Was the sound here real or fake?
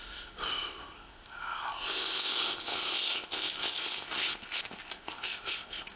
fake